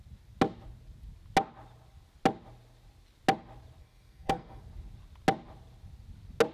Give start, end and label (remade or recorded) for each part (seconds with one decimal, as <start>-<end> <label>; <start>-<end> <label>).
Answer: 0.0-3.8 recorded; 3.8-4.6 remade; 4.6-6.5 recorded